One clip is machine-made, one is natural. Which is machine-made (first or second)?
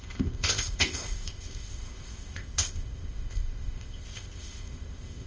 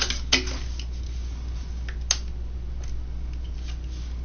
first